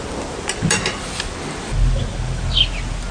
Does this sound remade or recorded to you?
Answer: recorded